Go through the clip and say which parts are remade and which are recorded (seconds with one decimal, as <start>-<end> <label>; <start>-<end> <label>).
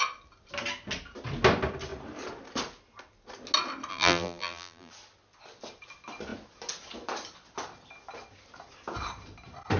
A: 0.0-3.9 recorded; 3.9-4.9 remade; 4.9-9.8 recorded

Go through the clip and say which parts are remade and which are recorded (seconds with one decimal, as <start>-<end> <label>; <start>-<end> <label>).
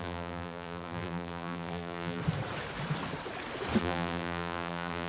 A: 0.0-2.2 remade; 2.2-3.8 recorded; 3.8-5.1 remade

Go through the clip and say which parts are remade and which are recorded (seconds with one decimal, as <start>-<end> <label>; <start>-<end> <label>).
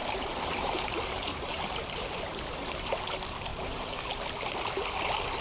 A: 0.0-3.0 remade; 3.0-3.5 recorded; 3.5-4.3 remade; 4.3-5.4 recorded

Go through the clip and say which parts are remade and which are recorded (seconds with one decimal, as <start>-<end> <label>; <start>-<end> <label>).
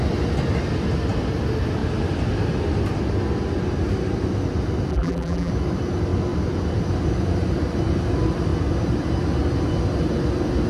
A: 0.0-4.9 recorded; 4.9-5.5 remade; 5.5-10.7 recorded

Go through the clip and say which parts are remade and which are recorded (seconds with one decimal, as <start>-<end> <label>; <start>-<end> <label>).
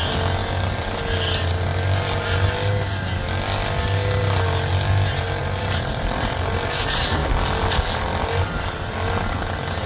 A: 0.0-5.4 recorded; 5.4-6.4 remade; 6.4-9.9 recorded